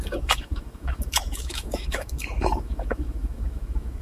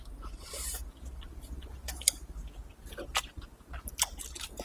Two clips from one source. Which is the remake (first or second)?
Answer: first